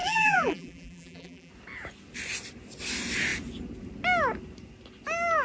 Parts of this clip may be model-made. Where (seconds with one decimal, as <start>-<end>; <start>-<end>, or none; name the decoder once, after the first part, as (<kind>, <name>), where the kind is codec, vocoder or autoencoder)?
0.0-1.5 (vocoder, BigVGAN v2)